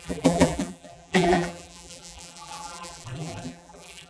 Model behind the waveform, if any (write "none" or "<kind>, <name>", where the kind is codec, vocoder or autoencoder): vocoder, BigVGAN v2